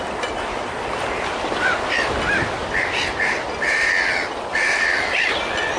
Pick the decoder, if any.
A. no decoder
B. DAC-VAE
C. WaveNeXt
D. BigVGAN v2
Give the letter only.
A